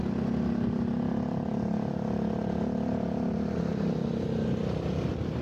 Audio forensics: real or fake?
real